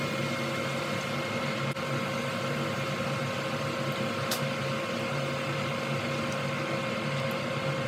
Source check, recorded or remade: recorded